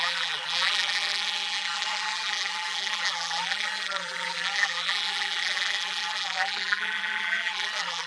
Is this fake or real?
fake